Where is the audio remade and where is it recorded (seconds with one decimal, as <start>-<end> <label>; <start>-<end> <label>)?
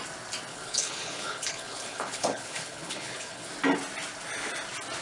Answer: 0.0-0.5 recorded; 0.5-3.5 remade; 3.5-5.0 recorded